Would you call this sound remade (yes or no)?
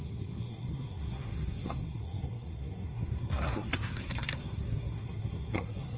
yes